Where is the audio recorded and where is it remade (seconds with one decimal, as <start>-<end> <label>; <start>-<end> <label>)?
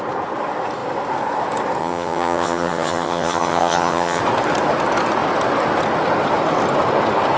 0.0-1.8 recorded; 1.8-4.2 remade; 4.2-7.4 recorded